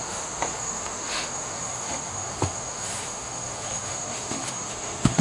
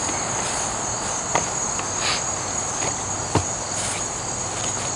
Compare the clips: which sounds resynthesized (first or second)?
first